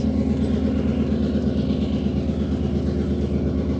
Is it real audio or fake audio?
real